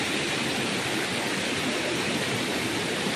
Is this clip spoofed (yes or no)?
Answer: no